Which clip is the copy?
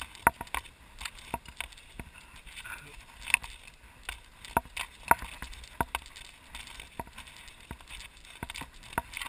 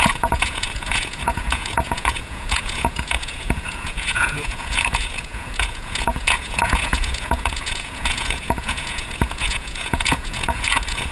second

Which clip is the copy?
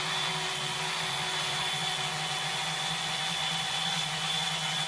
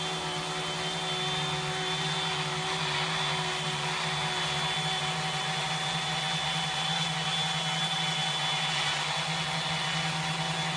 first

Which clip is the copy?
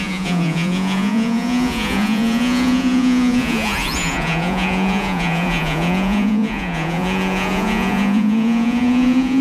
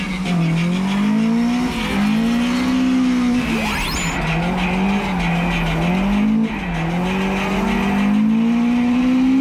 first